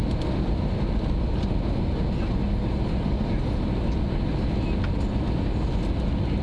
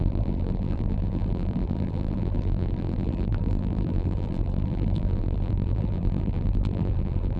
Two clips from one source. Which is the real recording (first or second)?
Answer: first